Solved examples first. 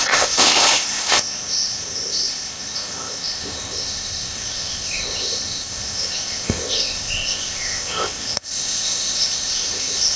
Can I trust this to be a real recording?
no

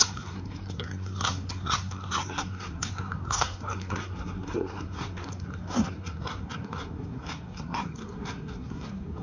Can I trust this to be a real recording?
no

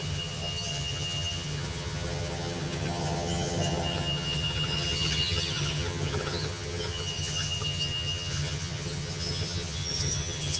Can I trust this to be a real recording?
no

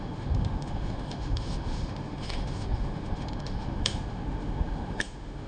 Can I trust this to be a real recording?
no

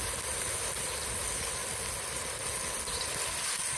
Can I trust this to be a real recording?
yes